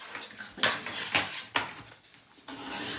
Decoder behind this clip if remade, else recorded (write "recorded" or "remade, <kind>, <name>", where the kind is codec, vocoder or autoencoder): recorded